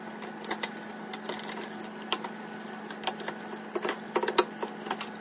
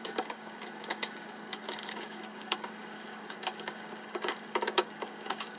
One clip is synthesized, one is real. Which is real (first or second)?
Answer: first